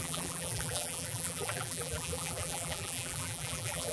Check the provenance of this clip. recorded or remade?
remade